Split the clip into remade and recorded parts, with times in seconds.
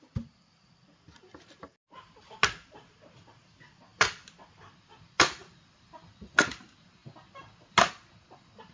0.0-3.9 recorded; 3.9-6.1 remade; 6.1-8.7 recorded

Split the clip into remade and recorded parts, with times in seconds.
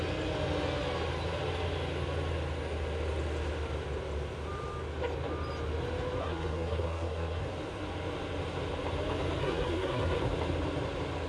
0.0-6.2 recorded; 6.2-7.4 remade; 7.4-9.4 recorded; 9.4-10.2 remade; 10.2-11.3 recorded